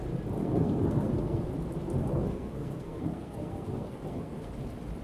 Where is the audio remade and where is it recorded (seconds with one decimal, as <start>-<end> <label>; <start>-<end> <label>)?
0.0-0.4 recorded; 0.4-1.5 remade; 1.5-2.0 recorded; 2.0-4.5 remade; 4.5-5.0 recorded